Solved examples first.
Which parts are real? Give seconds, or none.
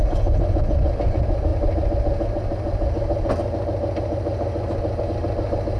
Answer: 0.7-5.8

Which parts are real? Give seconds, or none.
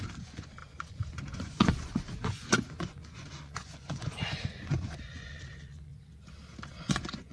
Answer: 5.9-6.8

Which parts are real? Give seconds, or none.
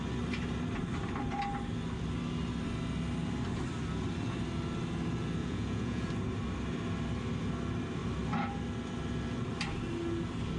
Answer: 0.0-5.4; 6.1-10.6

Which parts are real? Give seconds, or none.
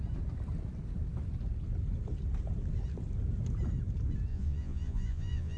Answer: 0.0-4.3